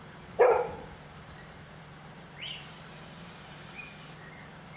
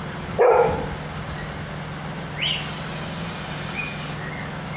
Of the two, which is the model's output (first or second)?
first